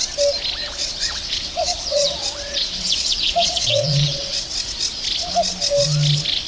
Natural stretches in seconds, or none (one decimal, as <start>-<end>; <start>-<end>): 0.0-0.6; 4.5-6.5